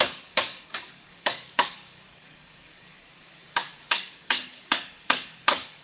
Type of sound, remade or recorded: remade